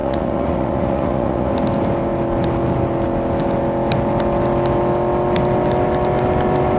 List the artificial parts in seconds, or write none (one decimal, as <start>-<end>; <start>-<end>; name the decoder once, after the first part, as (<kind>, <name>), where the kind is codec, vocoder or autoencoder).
0.0-1.5 (vocoder, Vocos)